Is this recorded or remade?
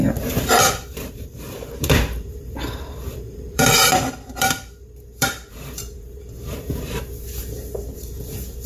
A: remade